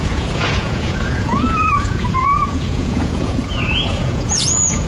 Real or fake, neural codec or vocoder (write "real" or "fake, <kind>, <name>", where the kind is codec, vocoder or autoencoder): fake, vocoder, Vocos